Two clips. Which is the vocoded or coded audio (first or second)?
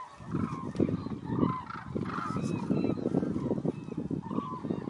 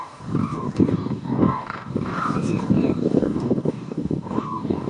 second